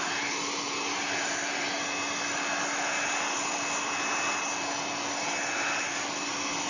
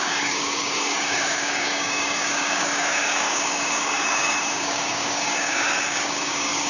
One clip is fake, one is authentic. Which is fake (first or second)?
second